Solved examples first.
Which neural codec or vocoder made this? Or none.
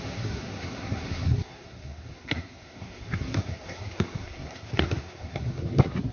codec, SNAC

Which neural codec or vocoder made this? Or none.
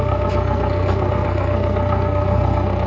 codec, SNAC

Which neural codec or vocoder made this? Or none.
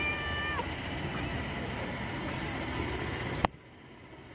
none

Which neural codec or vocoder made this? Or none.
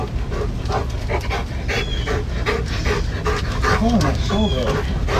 none